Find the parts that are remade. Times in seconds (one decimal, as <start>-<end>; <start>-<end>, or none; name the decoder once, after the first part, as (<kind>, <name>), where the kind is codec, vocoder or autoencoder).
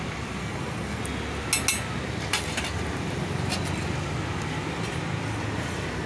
0.4-1.0 (codec, SNAC)